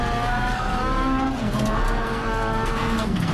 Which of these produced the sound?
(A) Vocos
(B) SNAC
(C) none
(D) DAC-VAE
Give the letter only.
B